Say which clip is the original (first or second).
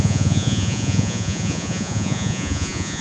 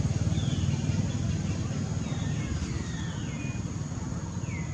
second